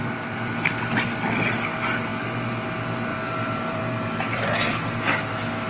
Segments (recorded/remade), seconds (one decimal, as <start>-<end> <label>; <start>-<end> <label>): 0.0-0.5 remade; 0.5-3.1 recorded; 3.1-3.8 remade; 3.8-5.7 recorded

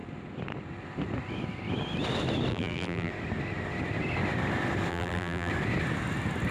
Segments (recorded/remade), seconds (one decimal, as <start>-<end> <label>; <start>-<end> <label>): 0.0-2.5 recorded; 2.5-3.1 remade; 3.1-4.9 recorded; 4.9-5.5 remade; 5.5-6.5 recorded